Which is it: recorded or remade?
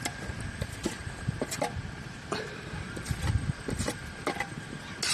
recorded